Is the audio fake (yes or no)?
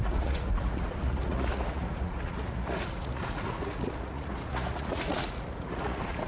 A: yes